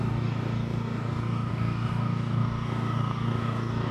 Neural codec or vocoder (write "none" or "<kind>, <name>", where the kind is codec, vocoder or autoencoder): codec, DAC